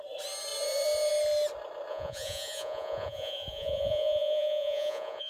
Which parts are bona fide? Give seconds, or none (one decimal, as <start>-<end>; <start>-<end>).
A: 0.0-1.9